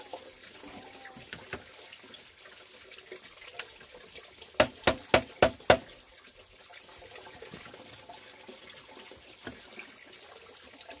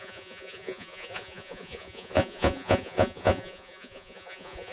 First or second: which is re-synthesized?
second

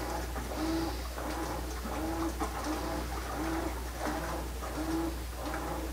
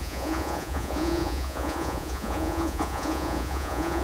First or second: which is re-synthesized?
second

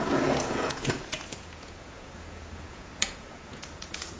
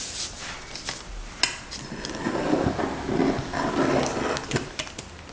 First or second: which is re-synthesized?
first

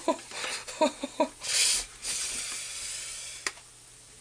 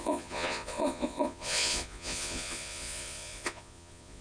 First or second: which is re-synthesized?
second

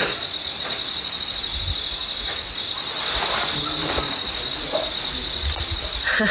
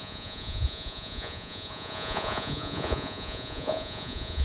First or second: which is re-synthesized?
second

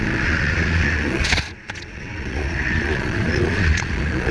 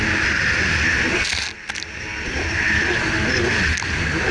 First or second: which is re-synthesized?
first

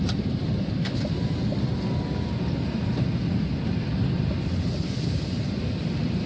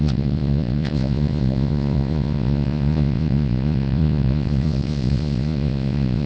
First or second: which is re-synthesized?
second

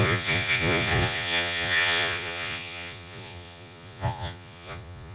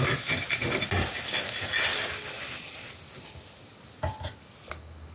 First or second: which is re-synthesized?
first